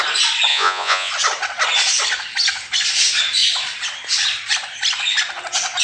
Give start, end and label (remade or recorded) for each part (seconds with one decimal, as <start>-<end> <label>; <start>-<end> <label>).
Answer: 0.0-0.5 recorded; 0.5-1.1 remade; 1.1-5.8 recorded